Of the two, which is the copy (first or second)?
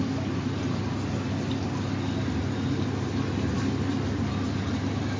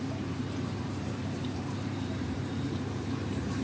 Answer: second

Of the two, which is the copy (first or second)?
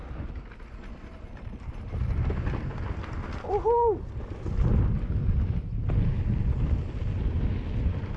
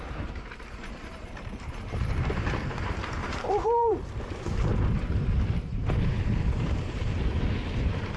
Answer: second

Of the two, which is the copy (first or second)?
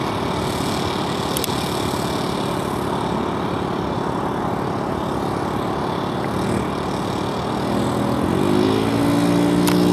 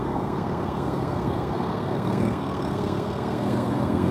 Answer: second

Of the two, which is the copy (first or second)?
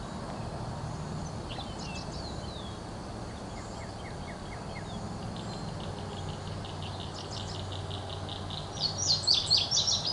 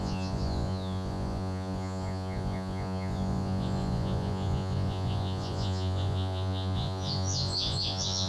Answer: second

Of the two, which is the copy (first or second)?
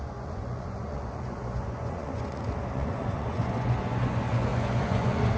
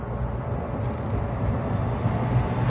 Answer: first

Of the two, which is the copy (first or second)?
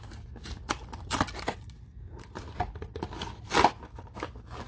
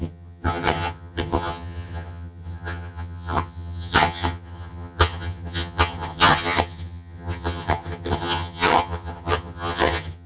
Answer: second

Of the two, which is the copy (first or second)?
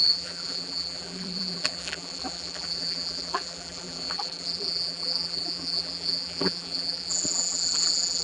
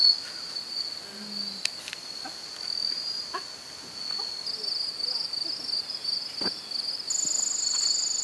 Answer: first